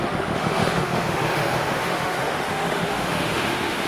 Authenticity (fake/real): fake